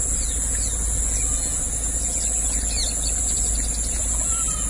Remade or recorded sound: recorded